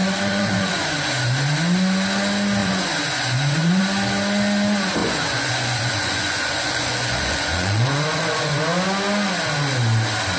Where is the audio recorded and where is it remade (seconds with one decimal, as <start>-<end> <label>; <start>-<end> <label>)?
0.0-1.1 remade; 1.1-2.6 recorded; 2.6-3.8 remade; 3.8-5.0 recorded; 5.0-8.6 remade; 8.6-10.4 recorded